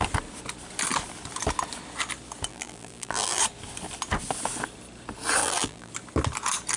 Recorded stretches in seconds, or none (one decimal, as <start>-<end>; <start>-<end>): 0.0-2.5; 3.4-5.4; 5.9-6.8